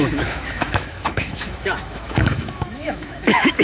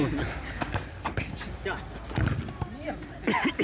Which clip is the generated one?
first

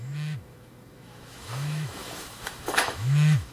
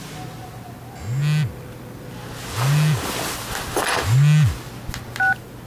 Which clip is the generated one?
first